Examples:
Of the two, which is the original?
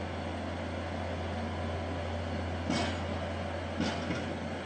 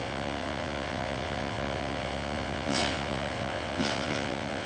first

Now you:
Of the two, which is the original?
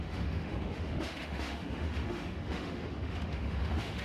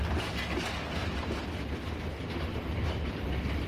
second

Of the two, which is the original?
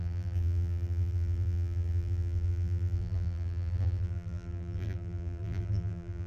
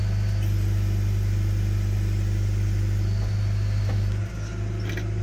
second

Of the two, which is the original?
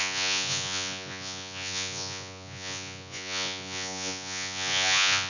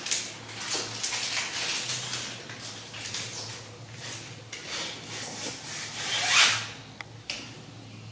second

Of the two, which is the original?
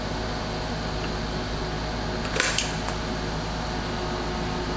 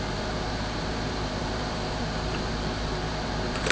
first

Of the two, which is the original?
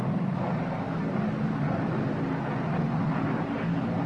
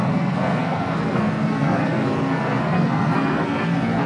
first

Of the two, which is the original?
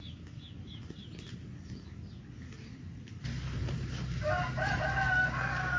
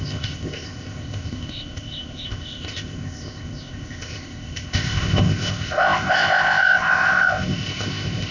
first